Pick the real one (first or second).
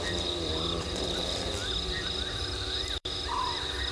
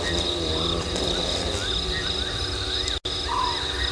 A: second